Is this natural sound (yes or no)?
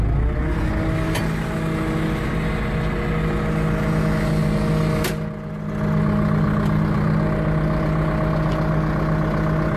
yes